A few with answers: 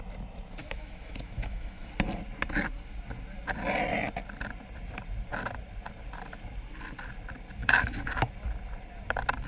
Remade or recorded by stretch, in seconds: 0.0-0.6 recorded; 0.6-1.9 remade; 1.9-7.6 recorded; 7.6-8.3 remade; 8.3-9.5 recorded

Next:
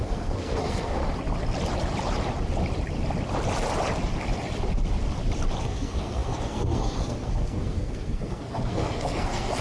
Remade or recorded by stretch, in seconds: 0.0-1.0 remade; 1.0-5.6 recorded; 5.6-9.6 remade

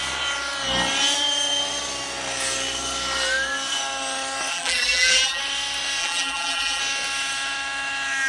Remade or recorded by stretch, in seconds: 0.0-4.5 recorded; 4.5-5.4 remade; 5.4-6.0 recorded; 6.0-6.8 remade; 6.8-8.3 recorded